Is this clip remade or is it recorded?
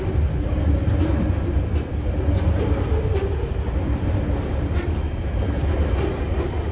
recorded